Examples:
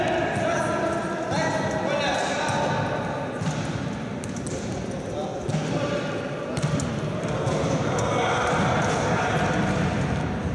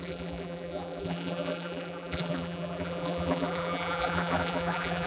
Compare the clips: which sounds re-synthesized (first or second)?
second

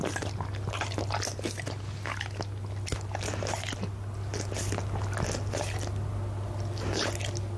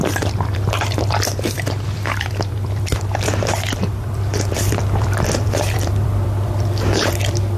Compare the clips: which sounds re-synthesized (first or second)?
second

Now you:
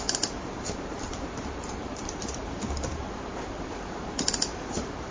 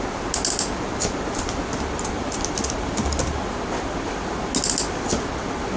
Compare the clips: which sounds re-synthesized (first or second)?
first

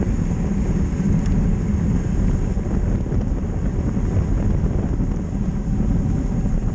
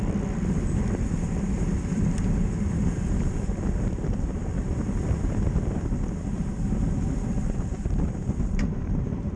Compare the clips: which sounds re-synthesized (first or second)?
second